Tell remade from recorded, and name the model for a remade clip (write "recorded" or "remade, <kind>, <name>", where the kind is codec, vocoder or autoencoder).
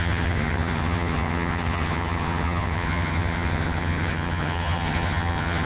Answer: remade, vocoder, HiFi-GAN